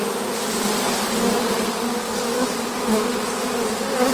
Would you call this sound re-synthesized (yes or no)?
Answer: no